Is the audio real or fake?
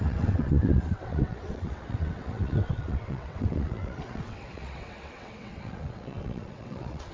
fake